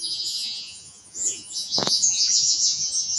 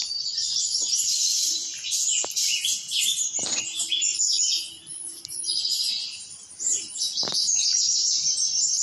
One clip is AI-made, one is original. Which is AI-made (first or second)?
first